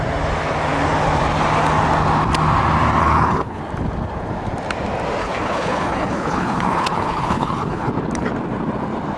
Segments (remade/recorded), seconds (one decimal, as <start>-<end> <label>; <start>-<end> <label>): 0.0-3.0 recorded; 3.0-3.6 remade; 3.6-5.2 recorded; 5.2-7.9 remade; 7.9-9.2 recorded